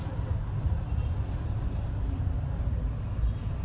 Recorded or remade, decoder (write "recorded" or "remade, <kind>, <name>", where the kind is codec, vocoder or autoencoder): recorded